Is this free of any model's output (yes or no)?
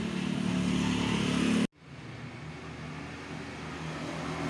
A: yes